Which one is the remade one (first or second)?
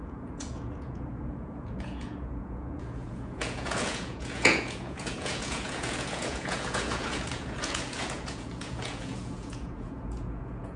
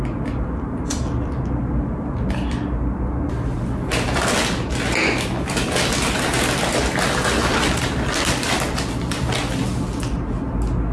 first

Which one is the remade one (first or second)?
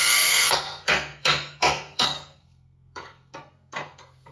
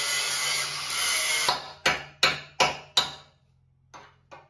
first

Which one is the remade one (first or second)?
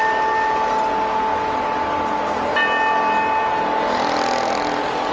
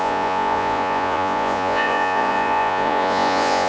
second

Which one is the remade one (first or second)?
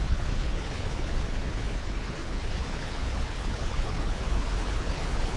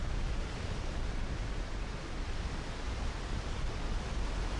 first